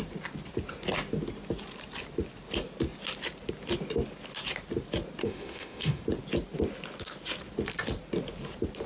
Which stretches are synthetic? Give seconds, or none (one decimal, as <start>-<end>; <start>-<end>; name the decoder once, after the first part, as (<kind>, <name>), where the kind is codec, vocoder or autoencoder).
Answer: 5.2-6.0 (autoencoder, DAC-VAE)